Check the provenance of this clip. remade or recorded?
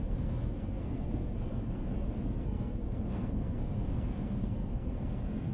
remade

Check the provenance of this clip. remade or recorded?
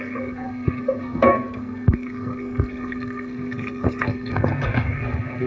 remade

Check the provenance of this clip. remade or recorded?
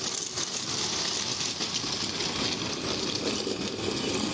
recorded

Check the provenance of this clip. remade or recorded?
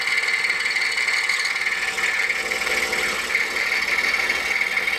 recorded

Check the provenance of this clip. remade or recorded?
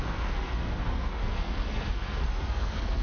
remade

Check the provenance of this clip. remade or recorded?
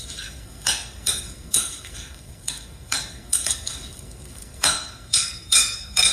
remade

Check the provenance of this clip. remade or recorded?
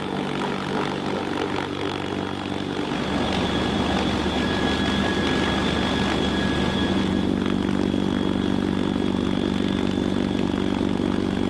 recorded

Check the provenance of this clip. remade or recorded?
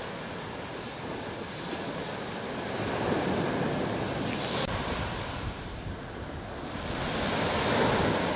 recorded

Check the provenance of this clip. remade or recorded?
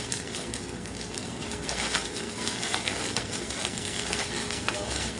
remade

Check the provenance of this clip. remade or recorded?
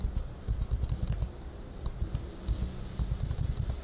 recorded